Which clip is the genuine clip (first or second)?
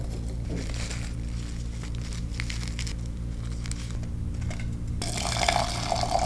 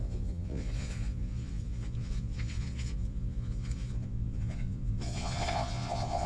first